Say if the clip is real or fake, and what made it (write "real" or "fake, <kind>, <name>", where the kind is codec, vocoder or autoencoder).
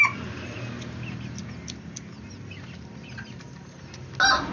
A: real